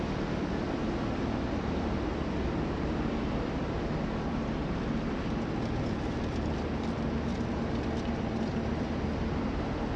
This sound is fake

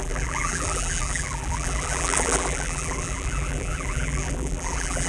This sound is fake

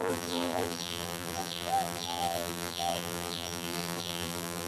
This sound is fake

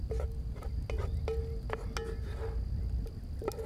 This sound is real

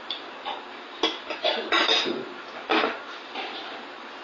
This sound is real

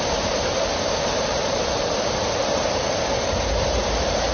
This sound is fake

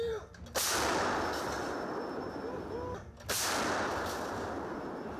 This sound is real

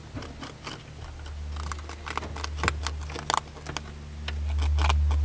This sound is real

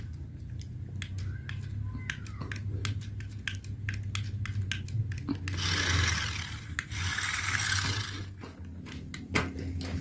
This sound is real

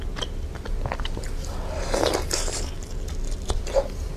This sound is real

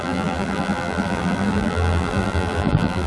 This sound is fake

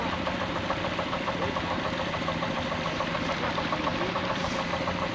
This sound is fake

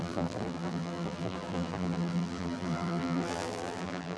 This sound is fake